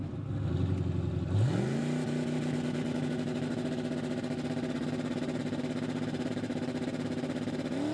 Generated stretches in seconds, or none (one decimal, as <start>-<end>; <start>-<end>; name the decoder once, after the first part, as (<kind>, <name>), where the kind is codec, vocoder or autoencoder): none